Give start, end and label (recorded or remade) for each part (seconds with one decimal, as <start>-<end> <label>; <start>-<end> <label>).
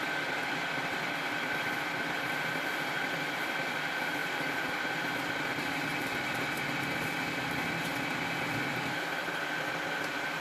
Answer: 0.0-4.2 recorded; 4.2-4.8 remade; 4.8-10.4 recorded